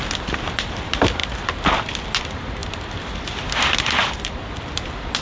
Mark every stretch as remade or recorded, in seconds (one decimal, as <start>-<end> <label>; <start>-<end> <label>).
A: 0.0-1.2 remade; 1.2-2.2 recorded; 2.2-5.2 remade